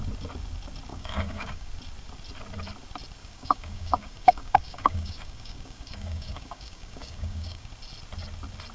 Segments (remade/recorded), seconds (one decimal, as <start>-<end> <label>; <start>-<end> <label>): 0.0-0.9 recorded; 0.9-1.7 remade; 1.7-3.2 recorded; 3.2-7.7 remade; 7.7-8.7 recorded